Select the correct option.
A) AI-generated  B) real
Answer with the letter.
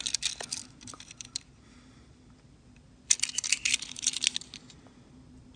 B